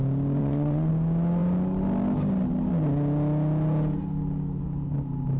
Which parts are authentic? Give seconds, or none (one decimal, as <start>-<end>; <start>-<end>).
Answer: 0.0-0.4; 0.9-5.4